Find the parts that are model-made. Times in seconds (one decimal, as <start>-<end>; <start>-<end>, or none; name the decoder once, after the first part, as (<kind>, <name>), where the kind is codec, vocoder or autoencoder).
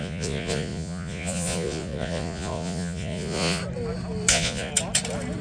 0.0-3.6 (vocoder, Vocos); 4.3-4.7